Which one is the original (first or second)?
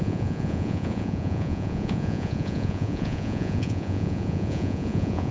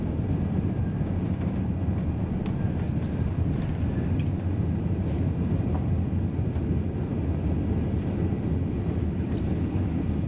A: second